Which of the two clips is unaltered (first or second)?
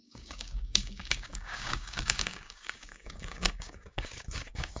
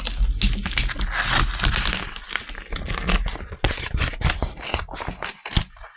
second